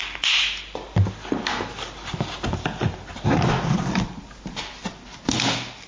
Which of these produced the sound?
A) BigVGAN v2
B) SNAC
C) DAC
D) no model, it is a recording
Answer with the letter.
D